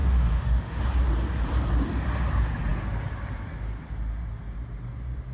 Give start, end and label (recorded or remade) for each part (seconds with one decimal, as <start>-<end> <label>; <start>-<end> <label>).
0.0-0.8 remade; 0.8-5.3 recorded